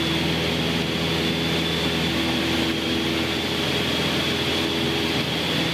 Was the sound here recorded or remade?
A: recorded